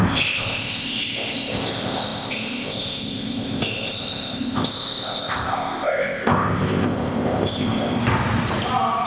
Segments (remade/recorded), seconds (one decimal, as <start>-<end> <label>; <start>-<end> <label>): 0.0-8.0 remade; 8.0-9.1 recorded